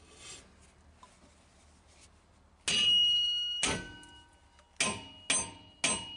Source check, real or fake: real